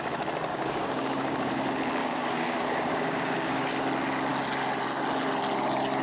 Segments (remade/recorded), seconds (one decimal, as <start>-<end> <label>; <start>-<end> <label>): 0.0-0.5 recorded; 0.5-1.5 remade; 1.5-2.0 recorded; 2.0-3.6 remade; 3.6-6.0 recorded